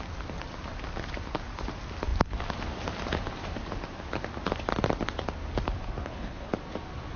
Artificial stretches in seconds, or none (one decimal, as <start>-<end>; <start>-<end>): 6.0-6.5